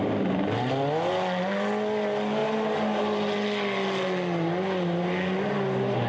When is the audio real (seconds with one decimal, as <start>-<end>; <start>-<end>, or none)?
0.0-6.1